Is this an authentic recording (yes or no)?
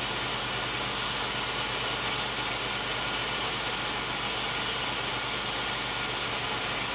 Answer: yes